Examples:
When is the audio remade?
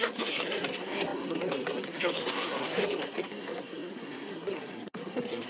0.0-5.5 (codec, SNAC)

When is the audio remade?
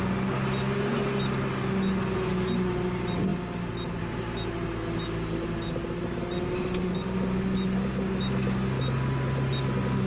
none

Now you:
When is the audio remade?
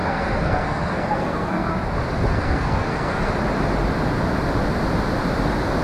0.0-1.7 (codec, SNAC); 2.3-3.3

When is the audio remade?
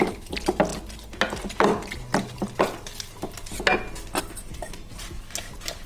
none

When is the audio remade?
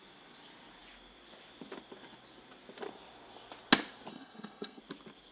4.1-4.8 (codec, SNAC)